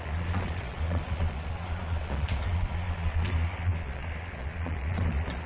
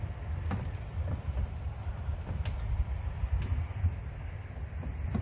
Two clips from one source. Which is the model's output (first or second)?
first